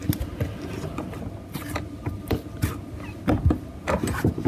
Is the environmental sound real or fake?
real